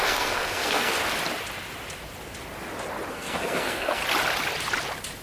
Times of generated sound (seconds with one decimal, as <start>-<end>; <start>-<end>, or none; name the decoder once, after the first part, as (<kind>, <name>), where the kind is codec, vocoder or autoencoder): 0.0-1.0 (codec, SNAC); 3.1-4.0